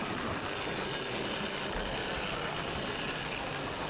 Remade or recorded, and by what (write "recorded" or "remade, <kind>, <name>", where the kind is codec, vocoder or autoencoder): recorded